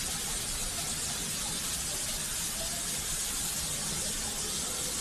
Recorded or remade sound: recorded